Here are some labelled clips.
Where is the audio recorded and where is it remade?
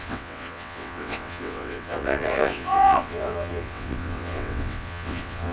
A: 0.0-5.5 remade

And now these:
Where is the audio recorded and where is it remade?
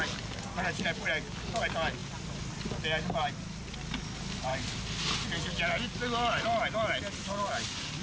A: 0.0-8.0 recorded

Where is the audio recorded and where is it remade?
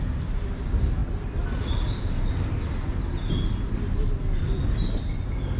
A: 0.0-5.6 recorded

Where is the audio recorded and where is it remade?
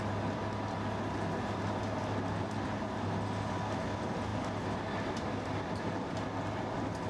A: 0.0-7.1 recorded